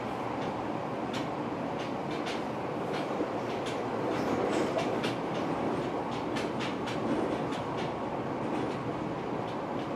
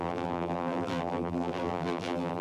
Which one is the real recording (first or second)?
first